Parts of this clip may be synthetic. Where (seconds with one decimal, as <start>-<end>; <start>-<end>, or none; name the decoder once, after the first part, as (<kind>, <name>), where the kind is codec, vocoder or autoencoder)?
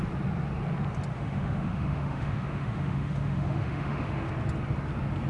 1.1-4.3 (autoencoder, DAC-VAE)